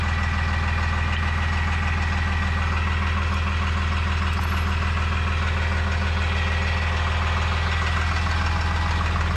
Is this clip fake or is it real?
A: real